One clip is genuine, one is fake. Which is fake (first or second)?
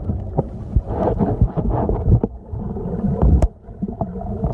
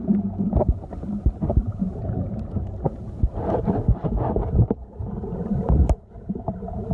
second